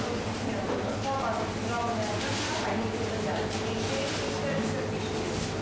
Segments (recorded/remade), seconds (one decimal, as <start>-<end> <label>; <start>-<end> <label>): 0.0-5.6 recorded